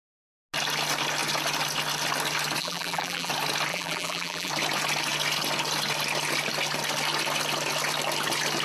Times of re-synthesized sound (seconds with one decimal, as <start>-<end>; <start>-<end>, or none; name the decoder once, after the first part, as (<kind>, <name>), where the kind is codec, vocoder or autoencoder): 2.6-3.3 (vocoder, BigVGAN v2); 3.7-4.5